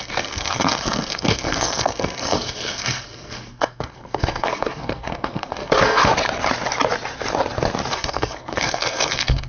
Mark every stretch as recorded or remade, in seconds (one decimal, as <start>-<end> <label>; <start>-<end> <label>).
0.0-6.1 remade; 6.1-7.9 recorded; 7.9-9.5 remade